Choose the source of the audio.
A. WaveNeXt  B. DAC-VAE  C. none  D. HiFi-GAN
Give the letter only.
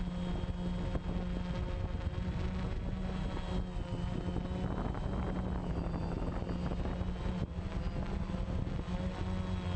C